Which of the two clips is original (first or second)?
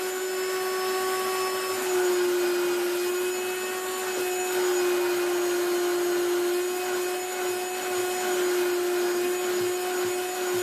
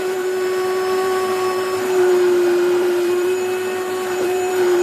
first